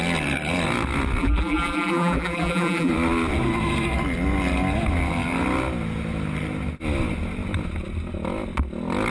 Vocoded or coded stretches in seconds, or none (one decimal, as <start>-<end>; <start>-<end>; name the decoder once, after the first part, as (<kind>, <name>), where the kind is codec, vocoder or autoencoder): 1.2-2.9 (vocoder, BigVGAN v2)